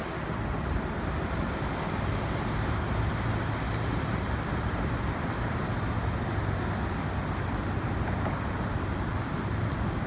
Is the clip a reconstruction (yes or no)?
no